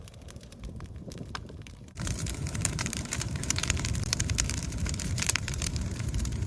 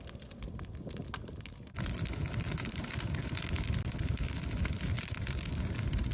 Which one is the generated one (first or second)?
first